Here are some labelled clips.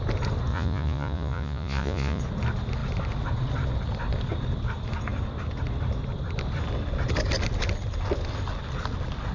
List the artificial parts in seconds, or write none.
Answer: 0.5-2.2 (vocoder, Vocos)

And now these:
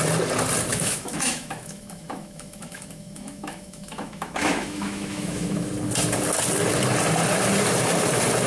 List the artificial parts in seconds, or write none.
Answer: 0.7-5.7 (autoencoder, DAC-VAE)